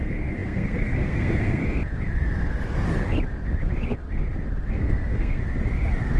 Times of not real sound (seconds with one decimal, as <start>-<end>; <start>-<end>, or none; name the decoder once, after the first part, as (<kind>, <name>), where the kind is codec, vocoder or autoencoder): 0.0-1.6 (codec, SNAC); 4.7-5.4